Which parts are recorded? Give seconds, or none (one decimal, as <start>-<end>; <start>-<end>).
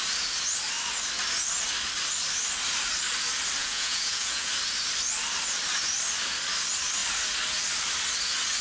0.0-3.6; 4.5-8.6